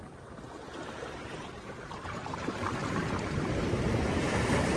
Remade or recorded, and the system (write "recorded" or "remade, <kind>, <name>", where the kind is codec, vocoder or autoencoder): remade, vocoder, BigVGAN v2